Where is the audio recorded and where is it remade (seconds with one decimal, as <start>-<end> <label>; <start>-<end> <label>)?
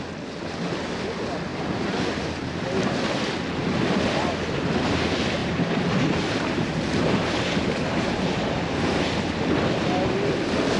0.0-1.5 recorded; 1.5-2.4 remade; 2.4-5.4 recorded; 5.4-9.0 remade; 9.0-10.8 recorded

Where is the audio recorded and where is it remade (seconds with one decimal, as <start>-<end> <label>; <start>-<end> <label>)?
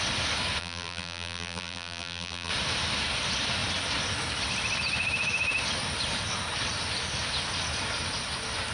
0.0-0.6 recorded; 0.6-2.5 remade; 2.5-8.7 recorded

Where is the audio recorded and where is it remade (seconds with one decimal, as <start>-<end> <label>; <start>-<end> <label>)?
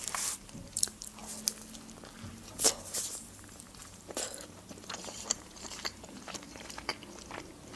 0.0-1.2 remade; 1.2-2.3 recorded; 2.3-6.9 remade; 6.9-7.8 recorded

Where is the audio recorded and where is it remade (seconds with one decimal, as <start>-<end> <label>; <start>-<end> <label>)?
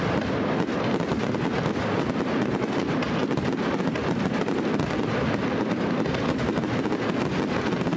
0.0-8.0 recorded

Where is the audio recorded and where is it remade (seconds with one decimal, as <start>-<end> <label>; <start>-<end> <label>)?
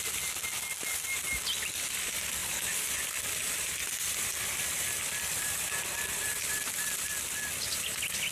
0.0-2.4 recorded; 2.4-7.0 remade; 7.0-8.3 recorded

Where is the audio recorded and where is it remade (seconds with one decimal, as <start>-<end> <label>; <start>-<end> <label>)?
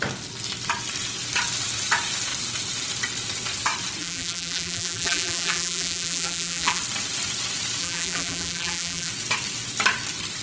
0.0-4.0 recorded; 4.0-6.8 remade; 6.8-7.8 recorded; 7.8-9.1 remade; 9.1-10.4 recorded